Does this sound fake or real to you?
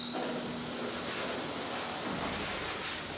real